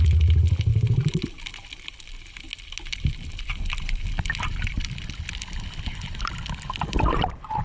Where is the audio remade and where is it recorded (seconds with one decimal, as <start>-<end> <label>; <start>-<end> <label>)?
0.0-7.6 recorded